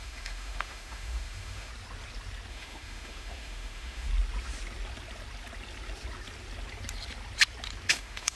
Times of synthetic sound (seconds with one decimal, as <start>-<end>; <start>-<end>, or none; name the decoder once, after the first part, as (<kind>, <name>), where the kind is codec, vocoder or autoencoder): 0.0-1.7 (autoencoder, DAC-VAE); 2.5-4.1; 7.9-8.4